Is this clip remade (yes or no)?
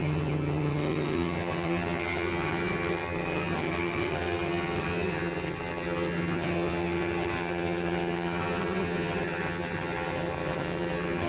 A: yes